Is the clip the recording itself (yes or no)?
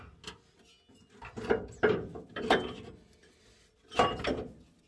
yes